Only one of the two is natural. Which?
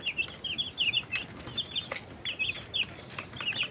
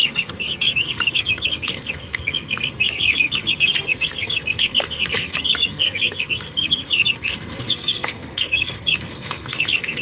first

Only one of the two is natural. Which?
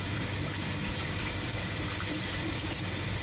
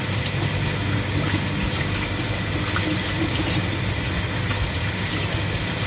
second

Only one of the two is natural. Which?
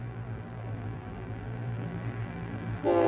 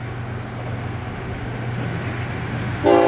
second